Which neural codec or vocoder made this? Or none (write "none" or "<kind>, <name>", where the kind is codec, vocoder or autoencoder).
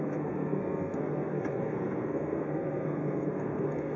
codec, SNAC